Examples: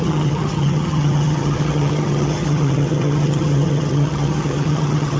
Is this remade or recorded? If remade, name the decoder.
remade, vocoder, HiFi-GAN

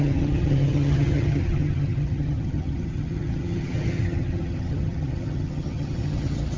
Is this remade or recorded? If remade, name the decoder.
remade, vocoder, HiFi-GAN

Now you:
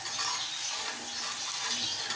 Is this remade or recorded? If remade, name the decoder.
recorded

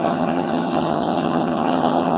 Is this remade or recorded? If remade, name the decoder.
remade, vocoder, HiFi-GAN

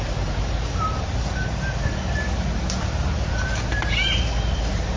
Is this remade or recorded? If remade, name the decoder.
recorded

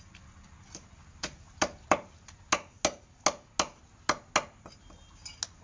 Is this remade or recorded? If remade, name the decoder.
recorded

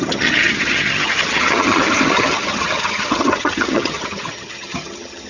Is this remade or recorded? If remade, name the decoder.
remade, vocoder, HiFi-GAN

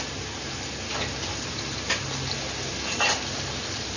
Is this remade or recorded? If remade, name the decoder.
recorded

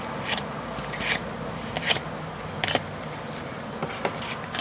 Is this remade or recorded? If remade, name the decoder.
recorded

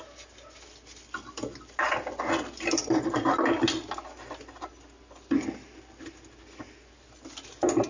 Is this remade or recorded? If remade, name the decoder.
recorded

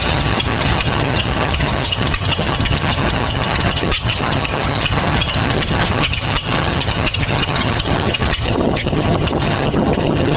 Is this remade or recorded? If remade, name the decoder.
remade, vocoder, HiFi-GAN